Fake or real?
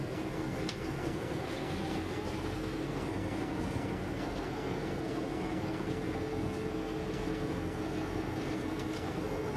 fake